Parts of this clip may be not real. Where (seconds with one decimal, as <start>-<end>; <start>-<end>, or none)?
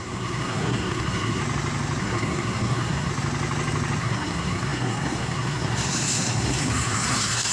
0.0-1.4; 2.0-3.1; 4.0-7.5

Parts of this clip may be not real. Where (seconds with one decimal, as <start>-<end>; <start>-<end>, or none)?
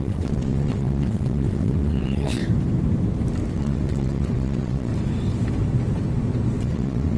0.0-2.4; 3.5-4.9; 6.6-7.2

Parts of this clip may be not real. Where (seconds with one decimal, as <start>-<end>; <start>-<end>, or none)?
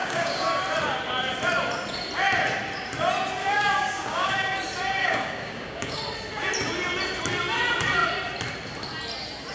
0.0-0.6; 3.4-4.6; 5.0-6.0